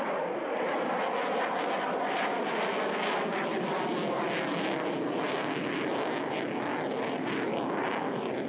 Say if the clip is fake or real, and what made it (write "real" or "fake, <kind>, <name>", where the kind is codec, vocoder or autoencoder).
real